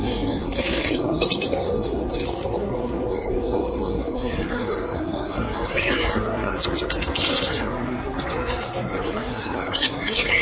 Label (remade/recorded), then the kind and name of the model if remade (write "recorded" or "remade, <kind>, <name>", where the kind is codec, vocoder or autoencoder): remade, codec, SNAC